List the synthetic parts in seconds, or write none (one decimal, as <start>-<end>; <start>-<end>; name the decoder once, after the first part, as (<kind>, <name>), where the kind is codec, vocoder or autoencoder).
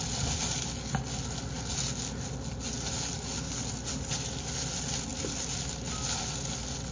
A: none